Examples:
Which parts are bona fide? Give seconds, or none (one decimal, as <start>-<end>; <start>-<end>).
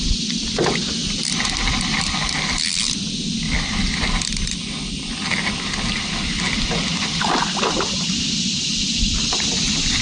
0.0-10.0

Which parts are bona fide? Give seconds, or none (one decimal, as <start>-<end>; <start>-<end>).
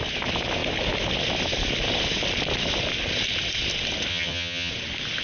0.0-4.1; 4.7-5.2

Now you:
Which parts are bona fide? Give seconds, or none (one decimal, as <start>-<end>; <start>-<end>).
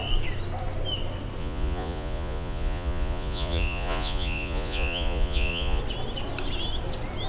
0.0-1.4; 5.8-7.3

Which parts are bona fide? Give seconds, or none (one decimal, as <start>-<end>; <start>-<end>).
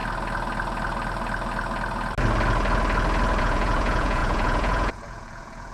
0.0-3.4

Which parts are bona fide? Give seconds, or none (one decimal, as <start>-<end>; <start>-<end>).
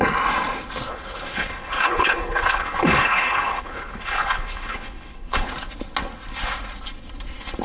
0.0-0.9; 5.5-7.6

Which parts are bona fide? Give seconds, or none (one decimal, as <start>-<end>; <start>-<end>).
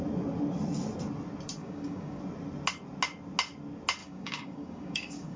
0.0-1.6; 2.2-4.0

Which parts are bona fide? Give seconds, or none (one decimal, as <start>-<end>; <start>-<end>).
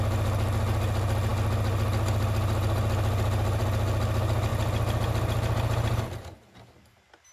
0.0-7.3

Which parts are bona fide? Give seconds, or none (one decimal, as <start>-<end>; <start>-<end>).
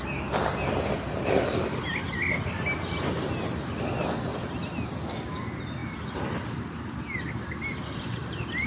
0.0-8.7